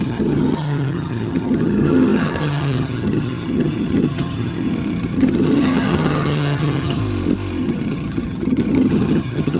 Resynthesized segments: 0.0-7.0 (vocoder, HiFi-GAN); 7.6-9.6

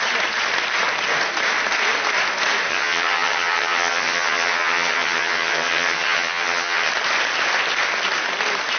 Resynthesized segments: 2.7-6.9 (vocoder, HiFi-GAN)